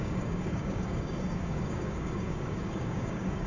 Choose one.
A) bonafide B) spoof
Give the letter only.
B